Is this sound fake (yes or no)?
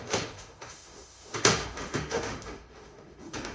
yes